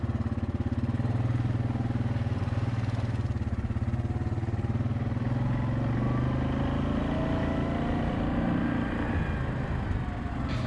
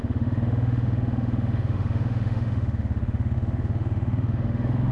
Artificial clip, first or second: second